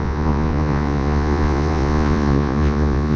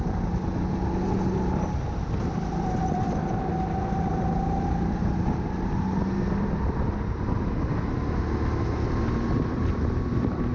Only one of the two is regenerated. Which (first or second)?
first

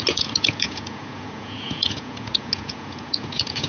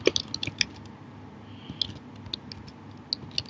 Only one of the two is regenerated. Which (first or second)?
first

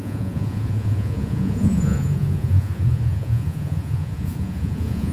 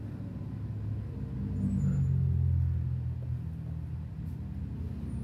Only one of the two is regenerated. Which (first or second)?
first